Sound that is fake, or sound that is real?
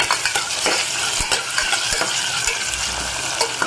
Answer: real